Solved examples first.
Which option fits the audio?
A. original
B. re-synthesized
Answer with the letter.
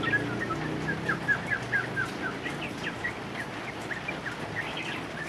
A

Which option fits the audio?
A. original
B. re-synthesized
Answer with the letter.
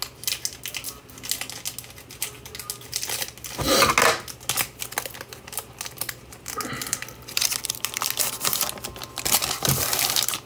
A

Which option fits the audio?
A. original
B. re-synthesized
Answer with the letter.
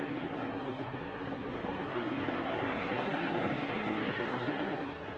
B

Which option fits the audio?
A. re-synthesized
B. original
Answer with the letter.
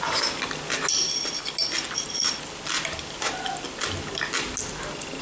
B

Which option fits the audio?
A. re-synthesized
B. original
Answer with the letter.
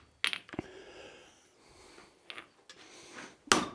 B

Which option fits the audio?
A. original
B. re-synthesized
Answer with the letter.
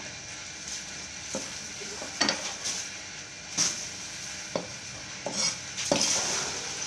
A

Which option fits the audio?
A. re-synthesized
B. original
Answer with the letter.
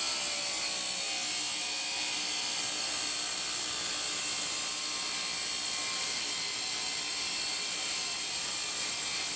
B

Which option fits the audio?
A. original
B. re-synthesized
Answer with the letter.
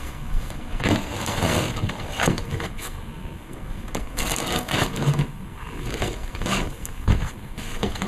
B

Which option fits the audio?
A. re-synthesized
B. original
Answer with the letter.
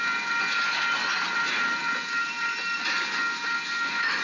B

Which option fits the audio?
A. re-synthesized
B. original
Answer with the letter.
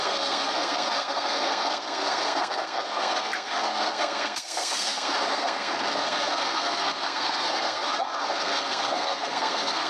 A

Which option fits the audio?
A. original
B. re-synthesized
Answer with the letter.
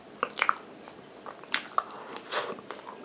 A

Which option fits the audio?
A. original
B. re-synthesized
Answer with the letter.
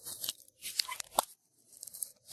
A